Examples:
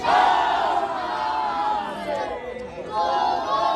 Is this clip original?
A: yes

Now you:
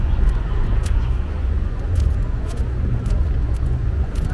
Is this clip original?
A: no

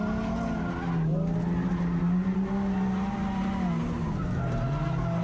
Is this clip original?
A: yes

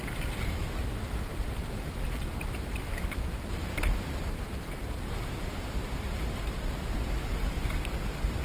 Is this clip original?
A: yes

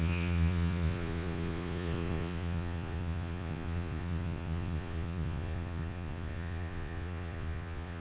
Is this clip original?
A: no